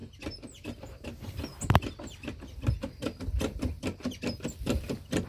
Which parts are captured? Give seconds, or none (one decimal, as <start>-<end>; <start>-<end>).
0.0-5.3